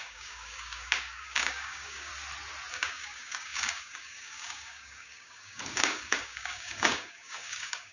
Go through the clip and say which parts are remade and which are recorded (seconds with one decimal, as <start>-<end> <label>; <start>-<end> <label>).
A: 0.0-2.1 remade; 2.1-2.7 recorded; 2.7-7.9 remade